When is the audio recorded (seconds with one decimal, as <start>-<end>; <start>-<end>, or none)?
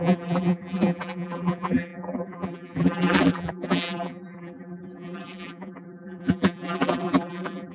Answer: none